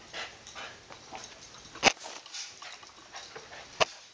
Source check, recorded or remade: recorded